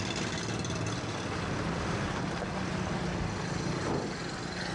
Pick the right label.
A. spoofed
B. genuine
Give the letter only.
B